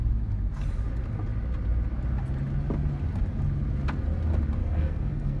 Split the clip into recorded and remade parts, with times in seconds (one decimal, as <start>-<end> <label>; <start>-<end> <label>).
0.0-4.6 recorded; 4.6-5.4 remade